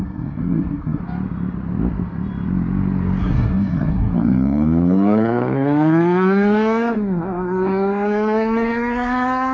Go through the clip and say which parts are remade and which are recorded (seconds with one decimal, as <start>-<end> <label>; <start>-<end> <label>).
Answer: 0.0-1.0 remade; 1.0-3.2 recorded; 3.2-9.5 remade